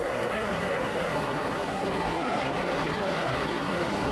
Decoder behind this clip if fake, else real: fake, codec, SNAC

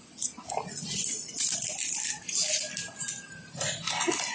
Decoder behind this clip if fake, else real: real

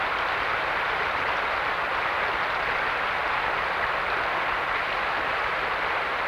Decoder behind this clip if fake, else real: real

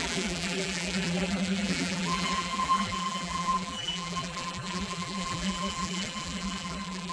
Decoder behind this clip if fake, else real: fake, vocoder, BigVGAN v2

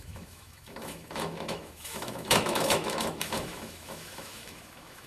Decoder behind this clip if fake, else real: fake, autoencoder, DAC-VAE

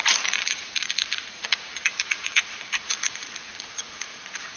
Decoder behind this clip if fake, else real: fake, vocoder, Vocos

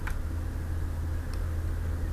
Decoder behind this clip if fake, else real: real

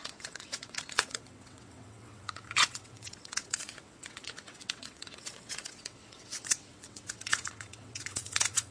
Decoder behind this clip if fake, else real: fake, vocoder, WaveNeXt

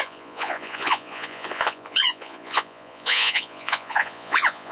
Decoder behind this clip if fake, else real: fake, vocoder, Vocos